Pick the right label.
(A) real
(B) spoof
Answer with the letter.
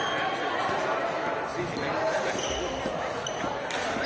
A